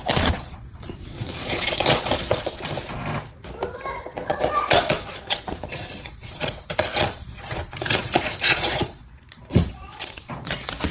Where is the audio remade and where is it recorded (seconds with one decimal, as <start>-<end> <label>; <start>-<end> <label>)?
0.0-2.7 remade; 2.7-4.0 recorded; 4.0-10.9 remade